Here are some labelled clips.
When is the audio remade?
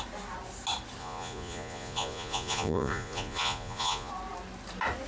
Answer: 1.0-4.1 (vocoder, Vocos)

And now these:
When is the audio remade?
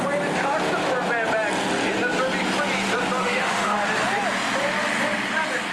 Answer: 3.2-3.8 (autoencoder, DAC-VAE)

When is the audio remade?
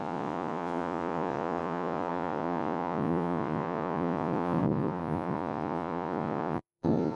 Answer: 0.0-7.2 (vocoder, Vocos)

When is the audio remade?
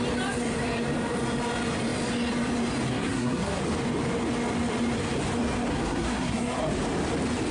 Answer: 2.9-3.6 (codec, SNAC); 5.7-6.6